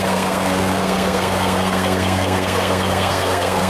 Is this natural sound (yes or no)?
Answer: no